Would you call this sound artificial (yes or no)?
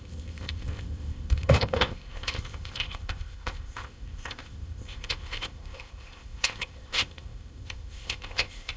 yes